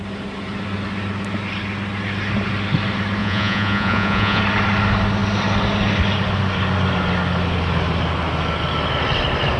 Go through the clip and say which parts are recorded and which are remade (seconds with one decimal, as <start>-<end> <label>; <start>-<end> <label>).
0.0-3.2 recorded; 3.2-4.4 remade; 4.4-9.6 recorded